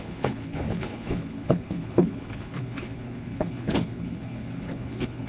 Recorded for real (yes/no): no